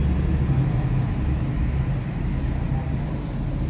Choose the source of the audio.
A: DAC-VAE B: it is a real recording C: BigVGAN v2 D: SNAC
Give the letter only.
B